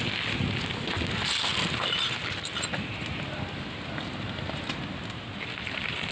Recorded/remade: recorded